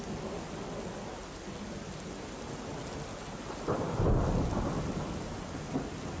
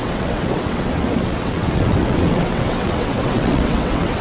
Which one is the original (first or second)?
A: first